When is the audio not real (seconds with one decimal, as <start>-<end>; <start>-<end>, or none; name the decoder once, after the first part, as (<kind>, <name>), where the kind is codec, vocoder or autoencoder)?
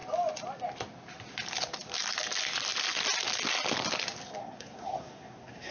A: 4.4-5.7 (codec, SNAC)